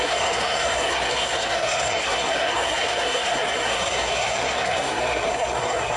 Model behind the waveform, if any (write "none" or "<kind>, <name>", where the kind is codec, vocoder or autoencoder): codec, SNAC